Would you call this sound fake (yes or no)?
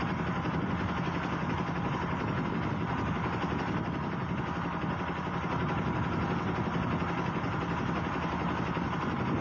no